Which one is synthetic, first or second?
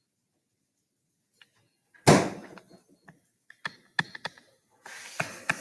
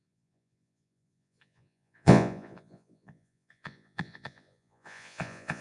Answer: second